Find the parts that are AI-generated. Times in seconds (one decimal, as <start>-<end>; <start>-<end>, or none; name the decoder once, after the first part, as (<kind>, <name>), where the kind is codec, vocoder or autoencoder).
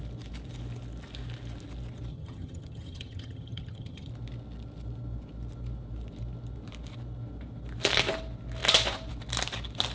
2.1-4.1 (vocoder, HiFi-GAN)